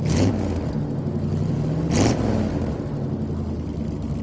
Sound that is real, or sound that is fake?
real